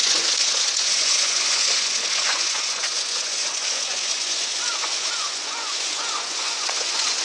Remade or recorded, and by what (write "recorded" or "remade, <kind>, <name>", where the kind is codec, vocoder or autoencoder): remade, vocoder, Vocos